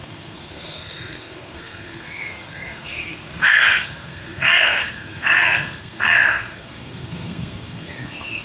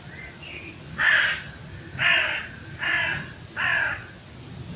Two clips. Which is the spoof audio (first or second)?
first